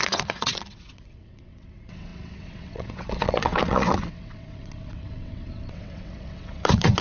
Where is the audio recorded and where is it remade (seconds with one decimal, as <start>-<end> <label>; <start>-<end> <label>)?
0.0-7.0 remade